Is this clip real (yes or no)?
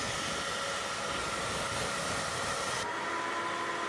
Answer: yes